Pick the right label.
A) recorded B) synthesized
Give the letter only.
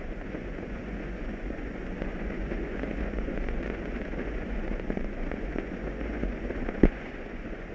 B